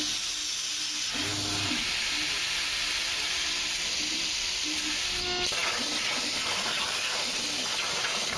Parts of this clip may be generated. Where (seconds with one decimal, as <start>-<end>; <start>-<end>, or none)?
none